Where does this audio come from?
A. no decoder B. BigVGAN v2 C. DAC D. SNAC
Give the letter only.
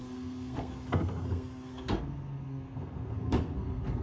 D